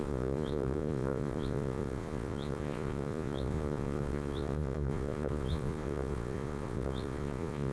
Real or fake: fake